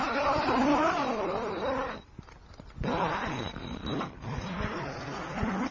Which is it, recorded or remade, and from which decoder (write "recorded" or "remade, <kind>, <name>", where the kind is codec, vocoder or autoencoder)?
remade, vocoder, BigVGAN v2